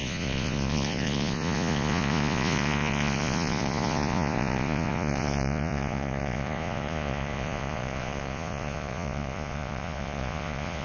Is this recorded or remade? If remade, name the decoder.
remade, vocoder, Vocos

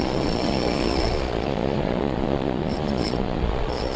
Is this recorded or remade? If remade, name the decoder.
remade, vocoder, Vocos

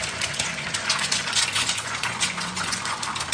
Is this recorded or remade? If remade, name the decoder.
remade, vocoder, Vocos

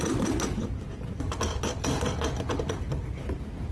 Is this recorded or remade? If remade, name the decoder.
recorded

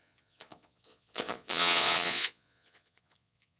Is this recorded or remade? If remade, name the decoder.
remade, vocoder, Vocos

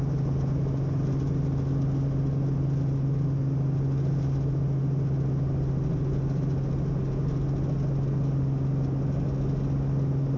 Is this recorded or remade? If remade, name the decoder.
recorded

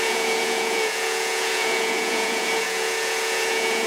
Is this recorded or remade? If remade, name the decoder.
remade, vocoder, Vocos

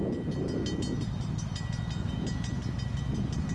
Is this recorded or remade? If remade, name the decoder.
recorded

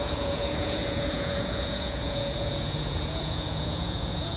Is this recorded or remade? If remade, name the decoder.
remade, vocoder, Vocos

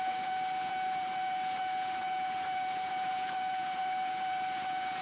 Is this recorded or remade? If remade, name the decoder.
remade, vocoder, Vocos